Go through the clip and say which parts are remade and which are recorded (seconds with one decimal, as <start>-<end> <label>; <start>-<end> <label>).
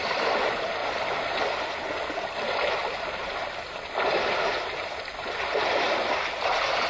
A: 0.0-6.9 recorded